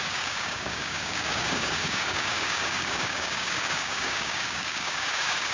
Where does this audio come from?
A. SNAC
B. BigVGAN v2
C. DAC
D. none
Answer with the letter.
C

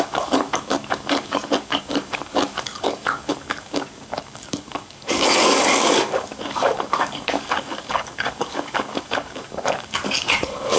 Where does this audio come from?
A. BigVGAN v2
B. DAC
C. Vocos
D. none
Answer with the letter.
B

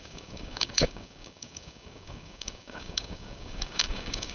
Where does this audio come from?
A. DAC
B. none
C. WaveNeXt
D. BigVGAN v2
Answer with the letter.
A